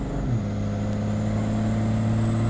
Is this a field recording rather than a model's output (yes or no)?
yes